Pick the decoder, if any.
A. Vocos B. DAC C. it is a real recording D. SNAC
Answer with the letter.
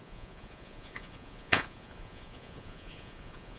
A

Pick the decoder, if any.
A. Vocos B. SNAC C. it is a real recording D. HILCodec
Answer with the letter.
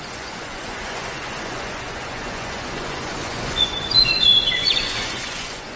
A